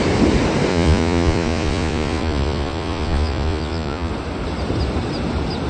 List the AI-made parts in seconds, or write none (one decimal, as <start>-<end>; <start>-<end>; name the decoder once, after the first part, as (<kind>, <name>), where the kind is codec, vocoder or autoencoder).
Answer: 0.7-4.1 (vocoder, Vocos)